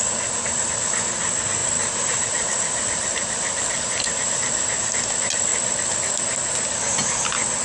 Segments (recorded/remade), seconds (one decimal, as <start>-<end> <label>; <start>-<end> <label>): 0.0-1.6 recorded; 1.6-3.8 remade; 3.8-5.5 recorded; 5.5-6.9 remade; 6.9-7.6 recorded